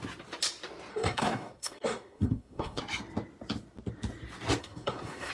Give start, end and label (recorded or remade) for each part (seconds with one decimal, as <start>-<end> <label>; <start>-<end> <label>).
0.0-0.9 recorded; 0.9-2.8 remade; 2.8-4.6 recorded; 4.6-5.3 remade